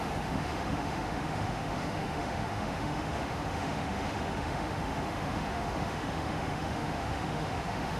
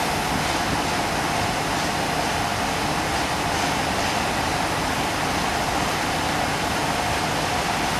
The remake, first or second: first